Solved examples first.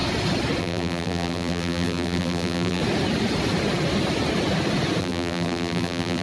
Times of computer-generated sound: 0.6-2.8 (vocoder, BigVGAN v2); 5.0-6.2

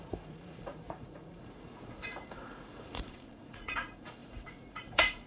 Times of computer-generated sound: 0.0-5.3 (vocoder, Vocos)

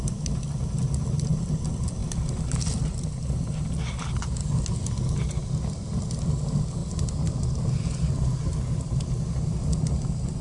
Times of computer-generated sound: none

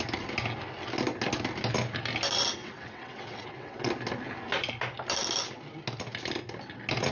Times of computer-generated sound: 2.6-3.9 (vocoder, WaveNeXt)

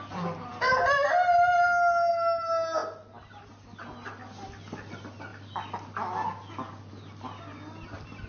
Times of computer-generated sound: none

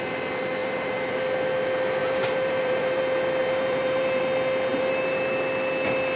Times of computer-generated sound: 0.6-1.2 (vocoder, BigVGAN v2); 2.0-3.0; 3.4-4.2; 4.7-5.3

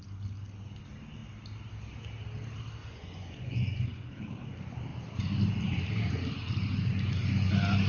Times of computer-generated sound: 2.8-4.1 (vocoder, Vocos)